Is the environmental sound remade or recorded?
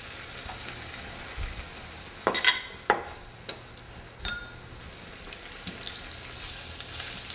recorded